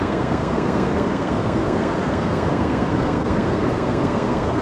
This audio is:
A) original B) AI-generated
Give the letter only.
B